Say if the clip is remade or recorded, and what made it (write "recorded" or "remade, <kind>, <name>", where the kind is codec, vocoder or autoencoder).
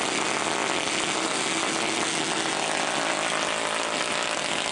recorded